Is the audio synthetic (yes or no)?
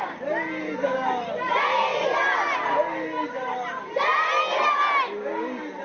no